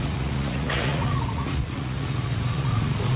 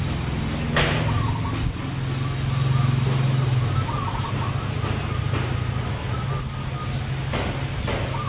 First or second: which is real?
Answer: second